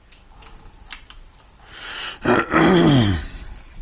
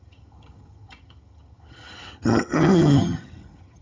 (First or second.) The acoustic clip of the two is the first